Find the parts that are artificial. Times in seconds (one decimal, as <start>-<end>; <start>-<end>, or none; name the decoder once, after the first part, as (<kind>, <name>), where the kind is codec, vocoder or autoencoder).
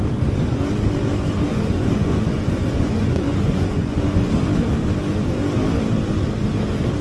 1.5-4.3 (vocoder, Vocos)